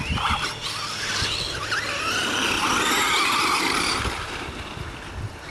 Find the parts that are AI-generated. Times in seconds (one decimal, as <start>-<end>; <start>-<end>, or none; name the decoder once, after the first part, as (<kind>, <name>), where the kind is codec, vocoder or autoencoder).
none